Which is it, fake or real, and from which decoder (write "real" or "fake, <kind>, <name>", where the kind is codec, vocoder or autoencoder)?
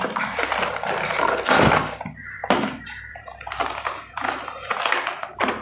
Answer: fake, vocoder, BigVGAN v2